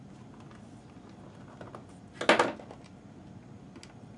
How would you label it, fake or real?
real